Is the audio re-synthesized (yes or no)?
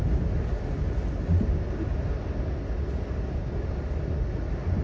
no